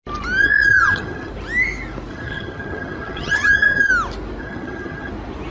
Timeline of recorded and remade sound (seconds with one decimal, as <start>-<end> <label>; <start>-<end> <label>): 0.0-0.4 recorded; 0.4-1.3 remade; 1.3-2.1 recorded; 2.1-3.9 remade; 3.9-4.4 recorded; 4.4-5.1 remade; 5.1-5.5 recorded